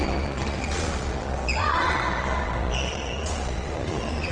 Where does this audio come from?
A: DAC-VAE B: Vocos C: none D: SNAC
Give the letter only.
B